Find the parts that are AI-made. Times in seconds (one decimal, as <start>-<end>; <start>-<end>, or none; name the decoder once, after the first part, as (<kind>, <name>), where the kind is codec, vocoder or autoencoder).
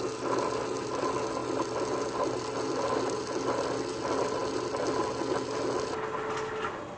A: none